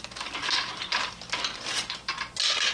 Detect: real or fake real